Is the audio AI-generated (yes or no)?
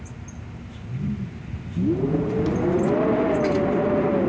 no